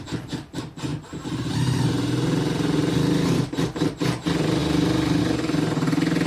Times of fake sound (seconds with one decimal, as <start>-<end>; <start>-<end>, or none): 0.9-1.4; 2.8-3.9